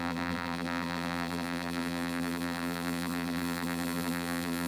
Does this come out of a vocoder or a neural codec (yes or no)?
yes